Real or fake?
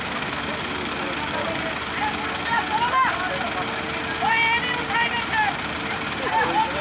real